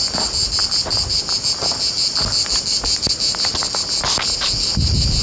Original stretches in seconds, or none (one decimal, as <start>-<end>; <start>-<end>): 0.0-5.2